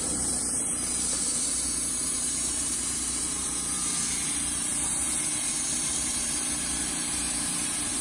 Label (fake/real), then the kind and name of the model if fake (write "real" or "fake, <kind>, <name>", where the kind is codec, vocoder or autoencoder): fake, vocoder, BigVGAN v2